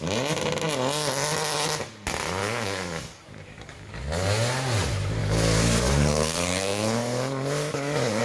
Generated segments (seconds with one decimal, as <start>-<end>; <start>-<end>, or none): 2.4-3.9; 5.2-8.2